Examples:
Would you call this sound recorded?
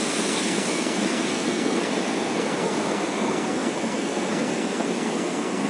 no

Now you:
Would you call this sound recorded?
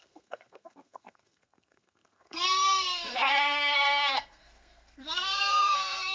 no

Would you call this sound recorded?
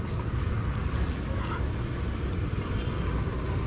yes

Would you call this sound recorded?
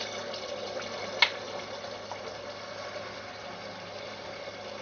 yes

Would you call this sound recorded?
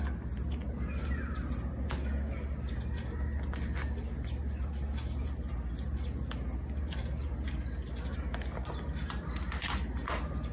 yes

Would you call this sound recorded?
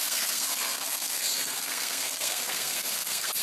no